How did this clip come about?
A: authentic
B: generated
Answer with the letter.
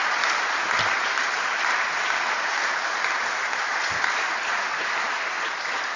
A